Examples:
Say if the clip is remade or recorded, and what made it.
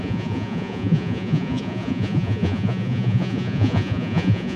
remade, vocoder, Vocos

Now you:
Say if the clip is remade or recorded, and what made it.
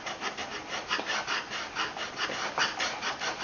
recorded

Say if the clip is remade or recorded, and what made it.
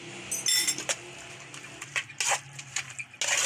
recorded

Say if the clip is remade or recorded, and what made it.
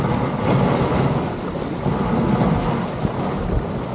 recorded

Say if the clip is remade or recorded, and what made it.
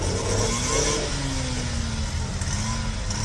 recorded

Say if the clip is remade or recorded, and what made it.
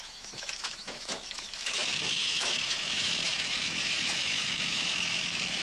remade, autoencoder, DAC-VAE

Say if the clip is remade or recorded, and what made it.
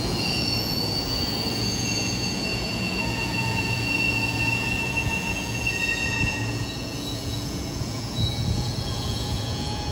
remade, vocoder, Vocos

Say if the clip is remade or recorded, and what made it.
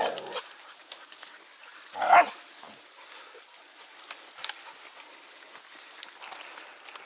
recorded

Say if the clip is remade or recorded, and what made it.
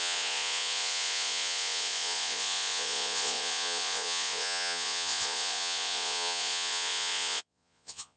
remade, vocoder, Vocos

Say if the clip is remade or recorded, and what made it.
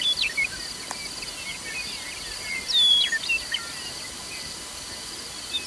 recorded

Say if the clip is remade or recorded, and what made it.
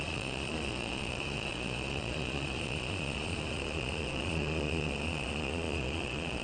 remade, vocoder, Vocos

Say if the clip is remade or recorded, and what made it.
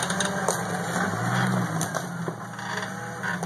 recorded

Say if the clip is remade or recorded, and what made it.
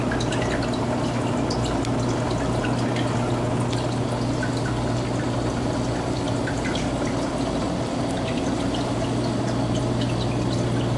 recorded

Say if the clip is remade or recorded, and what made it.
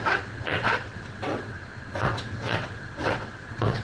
remade, vocoder, WaveNeXt